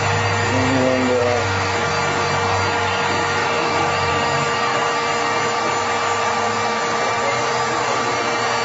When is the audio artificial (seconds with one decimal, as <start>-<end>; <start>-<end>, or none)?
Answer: 1.2-1.9; 3.4-4.1